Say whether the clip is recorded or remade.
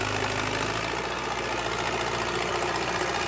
recorded